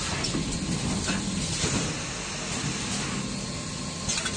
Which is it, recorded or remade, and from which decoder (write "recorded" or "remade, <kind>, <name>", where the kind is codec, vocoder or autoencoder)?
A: recorded